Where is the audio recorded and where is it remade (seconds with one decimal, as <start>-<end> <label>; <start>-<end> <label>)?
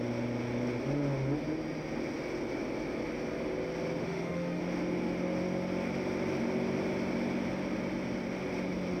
0.0-4.0 recorded; 4.0-4.6 remade; 4.6-9.0 recorded